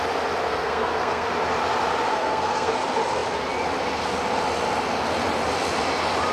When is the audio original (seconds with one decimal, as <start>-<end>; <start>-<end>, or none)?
0.0-0.5; 1.3-2.1; 2.7-6.3